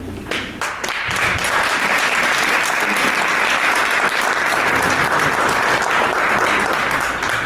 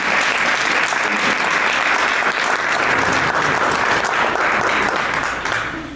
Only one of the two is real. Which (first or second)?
second